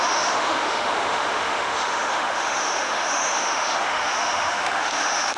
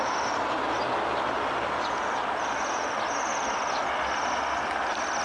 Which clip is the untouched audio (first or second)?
second